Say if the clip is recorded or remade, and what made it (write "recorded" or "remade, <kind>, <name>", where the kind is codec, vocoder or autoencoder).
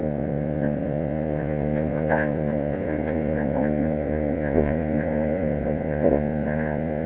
remade, vocoder, Vocos